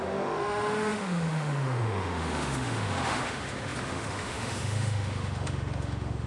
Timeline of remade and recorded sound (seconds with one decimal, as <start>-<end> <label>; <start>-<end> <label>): 0.0-6.3 remade